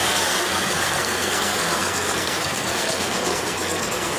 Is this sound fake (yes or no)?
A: yes